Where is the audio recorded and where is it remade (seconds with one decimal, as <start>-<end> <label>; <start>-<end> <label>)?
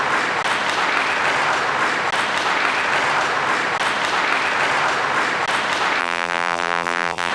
0.0-6.0 recorded; 6.0-7.3 remade